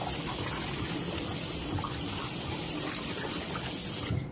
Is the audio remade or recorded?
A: recorded